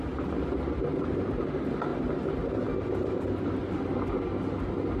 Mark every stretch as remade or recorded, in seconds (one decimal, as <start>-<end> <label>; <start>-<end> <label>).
0.0-5.0 recorded